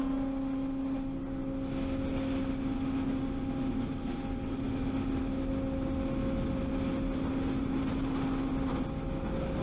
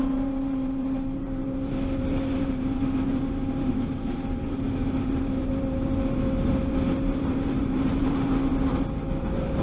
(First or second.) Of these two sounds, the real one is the first